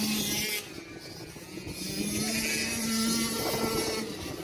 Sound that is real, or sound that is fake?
real